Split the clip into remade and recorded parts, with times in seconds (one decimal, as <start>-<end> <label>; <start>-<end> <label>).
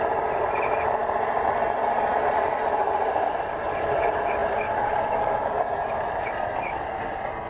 0.0-7.5 recorded